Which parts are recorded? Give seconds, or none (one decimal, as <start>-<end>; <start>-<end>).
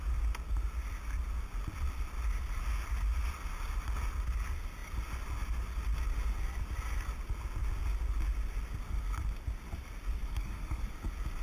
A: 0.0-10.2; 10.9-11.4